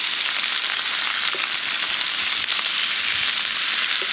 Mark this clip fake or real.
real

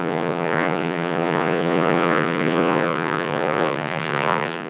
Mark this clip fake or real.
fake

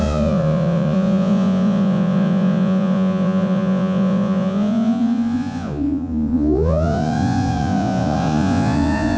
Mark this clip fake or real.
fake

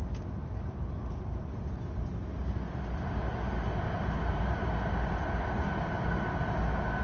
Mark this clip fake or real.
real